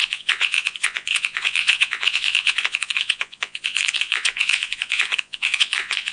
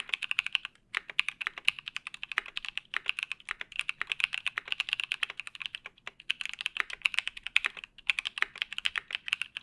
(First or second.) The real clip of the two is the second